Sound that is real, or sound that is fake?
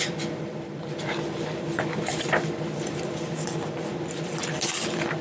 fake